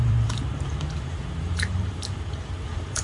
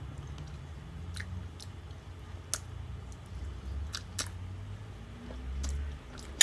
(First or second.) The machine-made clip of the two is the first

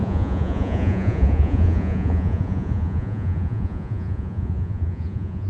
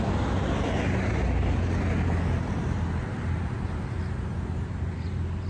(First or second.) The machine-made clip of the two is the first